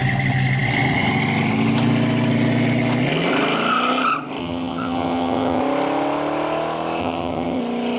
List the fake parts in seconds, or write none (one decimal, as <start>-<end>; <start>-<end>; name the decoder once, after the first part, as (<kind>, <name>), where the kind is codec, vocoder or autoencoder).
4.4-5.6 (vocoder, HiFi-GAN); 7.0-7.6